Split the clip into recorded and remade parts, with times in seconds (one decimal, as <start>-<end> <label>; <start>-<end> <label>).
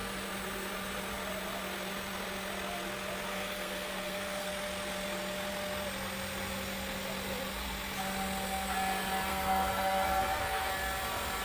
0.0-3.3 recorded; 3.3-4.5 remade; 4.5-9.3 recorded; 9.3-10.7 remade; 10.7-11.4 recorded